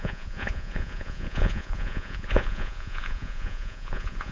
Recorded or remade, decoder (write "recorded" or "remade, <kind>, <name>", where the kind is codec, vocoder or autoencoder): remade, vocoder, Vocos